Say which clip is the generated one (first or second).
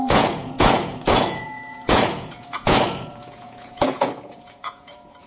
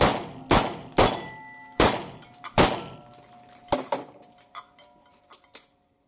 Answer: first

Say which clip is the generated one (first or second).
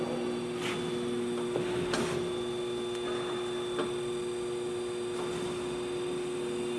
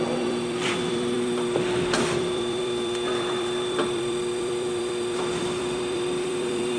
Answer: second